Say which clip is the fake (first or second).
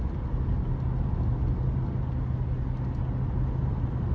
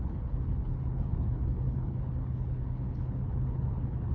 second